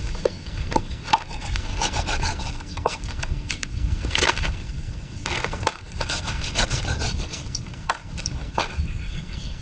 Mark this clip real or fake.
fake